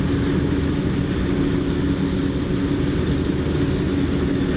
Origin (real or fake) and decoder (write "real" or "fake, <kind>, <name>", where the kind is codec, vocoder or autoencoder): real